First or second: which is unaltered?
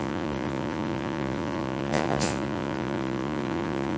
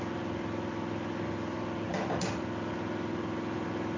second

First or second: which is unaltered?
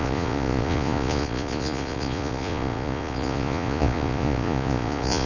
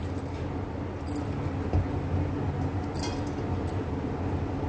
second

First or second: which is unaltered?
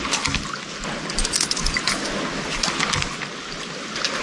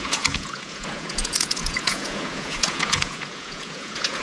first